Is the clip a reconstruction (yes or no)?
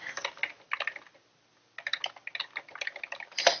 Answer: no